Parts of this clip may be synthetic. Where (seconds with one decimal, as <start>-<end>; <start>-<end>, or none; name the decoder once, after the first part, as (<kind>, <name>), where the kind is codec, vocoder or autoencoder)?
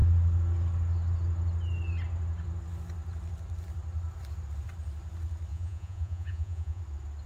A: 5.5-6.8 (vocoder, Vocos)